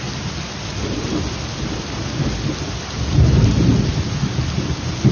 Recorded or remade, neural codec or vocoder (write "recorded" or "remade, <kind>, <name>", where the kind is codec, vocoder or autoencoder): recorded